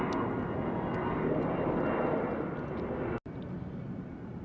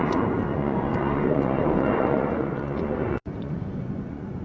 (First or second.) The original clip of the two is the first